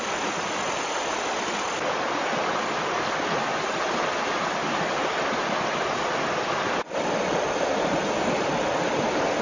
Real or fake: real